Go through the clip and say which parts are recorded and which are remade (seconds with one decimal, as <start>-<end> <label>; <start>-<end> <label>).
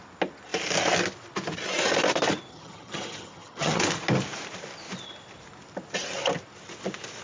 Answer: 0.0-2.5 recorded; 2.5-3.8 remade; 3.8-7.2 recorded